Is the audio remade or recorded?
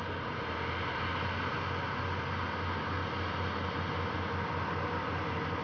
recorded